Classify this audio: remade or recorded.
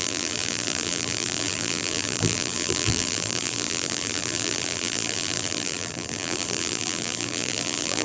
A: remade